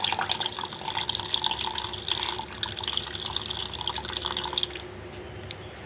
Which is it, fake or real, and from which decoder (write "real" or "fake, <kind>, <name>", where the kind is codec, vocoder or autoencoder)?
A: real